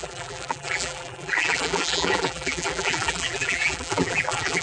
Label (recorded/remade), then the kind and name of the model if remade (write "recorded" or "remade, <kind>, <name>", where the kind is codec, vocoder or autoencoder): remade, vocoder, BigVGAN v2